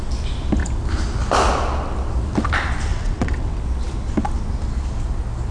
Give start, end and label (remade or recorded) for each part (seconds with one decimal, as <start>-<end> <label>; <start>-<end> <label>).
0.0-2.9 recorded; 2.9-3.6 remade; 3.6-5.5 recorded